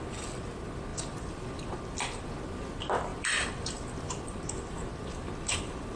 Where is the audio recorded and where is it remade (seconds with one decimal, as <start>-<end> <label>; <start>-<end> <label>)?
0.0-0.9 recorded; 0.9-1.8 remade; 1.8-3.1 recorded; 3.1-4.4 remade; 4.4-6.0 recorded